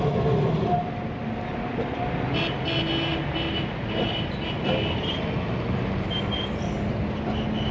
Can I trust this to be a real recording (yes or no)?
yes